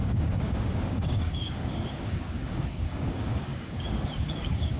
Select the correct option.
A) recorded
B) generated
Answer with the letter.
B